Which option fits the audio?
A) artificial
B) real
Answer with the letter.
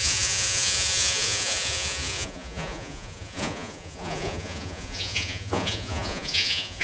A